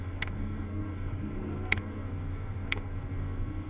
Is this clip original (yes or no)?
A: no